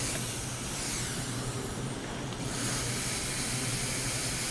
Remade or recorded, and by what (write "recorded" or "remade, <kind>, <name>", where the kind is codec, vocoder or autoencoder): recorded